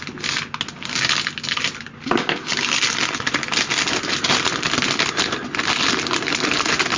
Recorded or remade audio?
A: recorded